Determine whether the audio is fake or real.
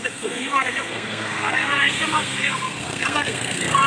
fake